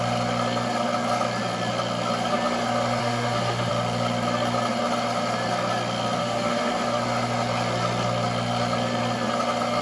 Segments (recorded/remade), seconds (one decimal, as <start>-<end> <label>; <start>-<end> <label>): 0.0-3.0 recorded; 3.0-3.7 remade; 3.7-6.2 recorded; 6.2-6.7 remade; 6.7-9.8 recorded